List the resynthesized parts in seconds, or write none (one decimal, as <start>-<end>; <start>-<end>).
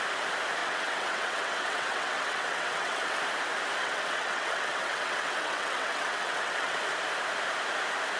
0.6-3.2; 3.8-6.8